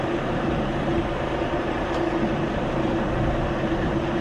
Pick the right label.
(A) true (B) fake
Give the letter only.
B